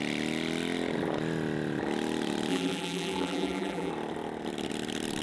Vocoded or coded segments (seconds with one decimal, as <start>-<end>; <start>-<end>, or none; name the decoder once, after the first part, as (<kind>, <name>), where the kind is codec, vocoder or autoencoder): 2.5-3.9 (vocoder, BigVGAN v2)